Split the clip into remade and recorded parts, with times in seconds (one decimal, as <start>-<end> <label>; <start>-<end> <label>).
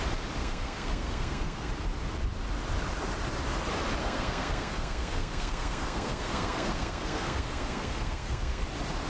0.0-0.4 recorded; 0.4-1.7 remade; 1.7-4.0 recorded; 4.0-8.6 remade; 8.6-9.1 recorded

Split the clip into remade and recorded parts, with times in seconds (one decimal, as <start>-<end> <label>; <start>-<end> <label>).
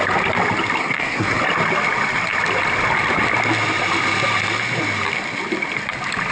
0.0-0.8 recorded; 0.8-1.4 remade; 1.4-6.3 recorded